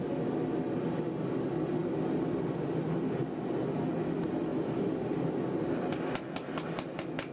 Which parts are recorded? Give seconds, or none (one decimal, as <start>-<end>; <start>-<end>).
0.0-4.5; 5.1-7.3